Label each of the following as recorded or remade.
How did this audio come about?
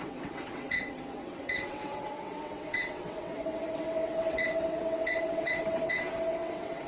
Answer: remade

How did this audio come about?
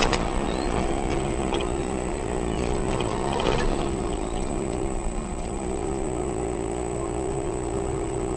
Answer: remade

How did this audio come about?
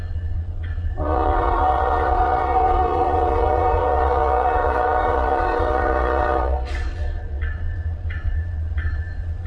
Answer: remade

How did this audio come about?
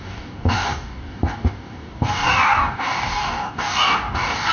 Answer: remade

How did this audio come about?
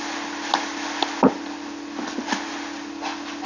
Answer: recorded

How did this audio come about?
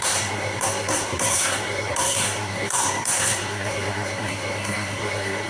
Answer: remade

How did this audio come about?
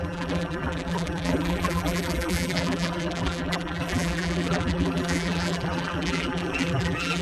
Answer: remade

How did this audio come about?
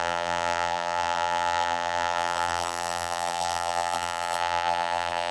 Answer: remade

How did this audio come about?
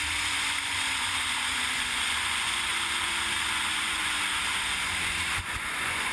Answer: remade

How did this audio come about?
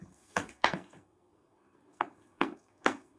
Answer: remade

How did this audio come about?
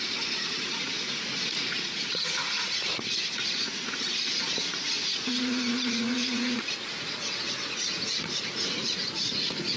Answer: remade